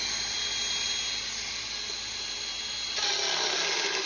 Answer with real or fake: real